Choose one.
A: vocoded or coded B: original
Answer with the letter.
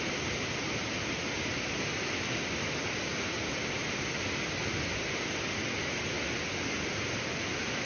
B